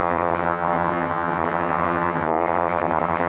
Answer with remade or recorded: remade